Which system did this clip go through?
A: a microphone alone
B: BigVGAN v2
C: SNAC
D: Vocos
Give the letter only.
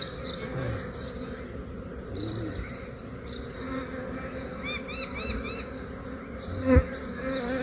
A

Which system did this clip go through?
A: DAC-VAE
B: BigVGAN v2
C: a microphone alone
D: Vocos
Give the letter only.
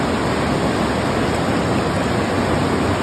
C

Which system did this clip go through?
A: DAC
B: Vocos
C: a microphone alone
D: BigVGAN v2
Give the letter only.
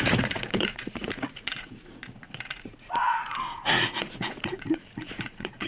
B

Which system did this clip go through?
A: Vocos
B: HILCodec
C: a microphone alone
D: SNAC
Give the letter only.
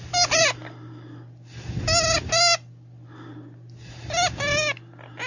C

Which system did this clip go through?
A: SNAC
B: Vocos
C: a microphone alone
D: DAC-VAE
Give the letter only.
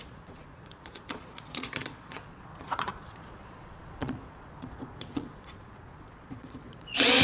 B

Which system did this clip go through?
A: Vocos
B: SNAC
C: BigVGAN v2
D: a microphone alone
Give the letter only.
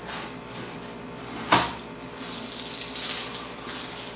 D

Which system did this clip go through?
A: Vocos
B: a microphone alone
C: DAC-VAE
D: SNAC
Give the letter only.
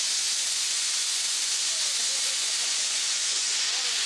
A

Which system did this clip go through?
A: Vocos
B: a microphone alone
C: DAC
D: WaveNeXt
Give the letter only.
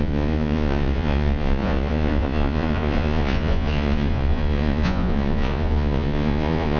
A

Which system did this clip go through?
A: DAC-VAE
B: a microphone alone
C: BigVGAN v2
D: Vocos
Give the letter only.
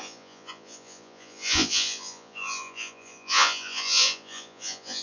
D